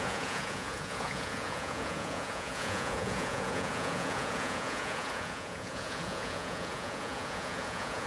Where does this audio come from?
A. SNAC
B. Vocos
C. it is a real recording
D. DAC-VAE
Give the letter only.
B